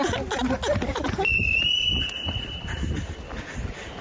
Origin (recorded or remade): recorded